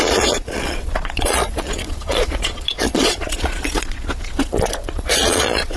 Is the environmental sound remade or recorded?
remade